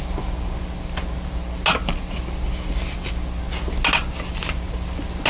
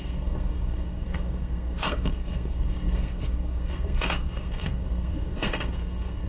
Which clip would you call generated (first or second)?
second